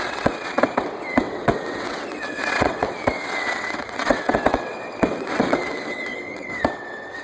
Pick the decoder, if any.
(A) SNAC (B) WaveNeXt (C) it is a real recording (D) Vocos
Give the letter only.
B